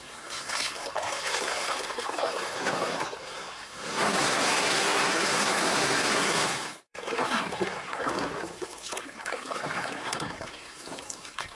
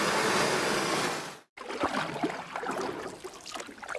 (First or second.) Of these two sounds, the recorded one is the second